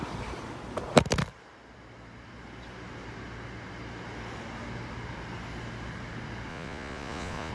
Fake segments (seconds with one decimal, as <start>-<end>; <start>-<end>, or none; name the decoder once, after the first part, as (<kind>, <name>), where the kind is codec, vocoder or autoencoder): 6.5-7.5 (vocoder, Vocos)